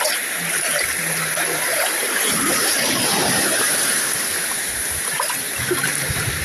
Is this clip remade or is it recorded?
remade